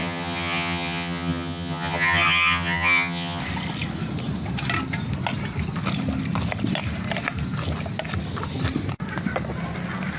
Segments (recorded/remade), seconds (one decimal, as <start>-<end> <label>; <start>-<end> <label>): 0.0-3.4 remade; 3.4-10.2 recorded